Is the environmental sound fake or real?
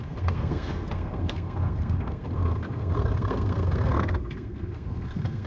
fake